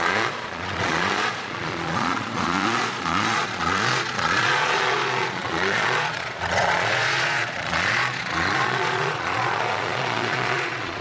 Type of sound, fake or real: fake